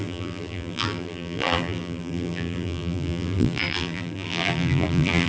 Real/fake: fake